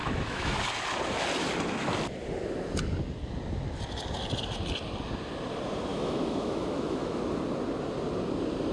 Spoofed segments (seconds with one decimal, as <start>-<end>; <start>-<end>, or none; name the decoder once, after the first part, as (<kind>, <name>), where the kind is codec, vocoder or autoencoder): 0.0-0.6 (autoencoder, DAC-VAE); 5.9-7.2